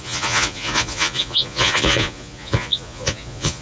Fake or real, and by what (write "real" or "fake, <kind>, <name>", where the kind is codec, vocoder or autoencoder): fake, vocoder, Vocos